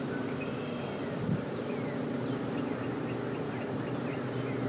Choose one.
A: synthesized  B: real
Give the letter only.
B